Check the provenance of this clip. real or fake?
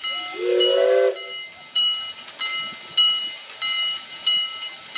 real